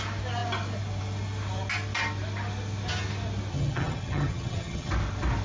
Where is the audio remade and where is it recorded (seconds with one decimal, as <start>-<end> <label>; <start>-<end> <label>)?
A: 0.0-3.5 recorded; 3.5-4.9 remade; 4.9-5.4 recorded